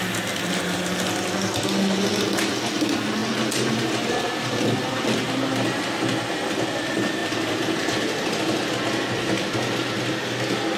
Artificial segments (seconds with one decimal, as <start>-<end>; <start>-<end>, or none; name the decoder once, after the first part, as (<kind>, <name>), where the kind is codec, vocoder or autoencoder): none